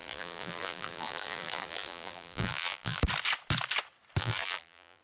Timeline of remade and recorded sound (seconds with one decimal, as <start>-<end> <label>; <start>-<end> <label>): 0.0-3.0 remade; 3.0-4.2 recorded; 4.2-5.0 remade